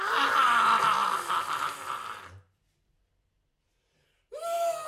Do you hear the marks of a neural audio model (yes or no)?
no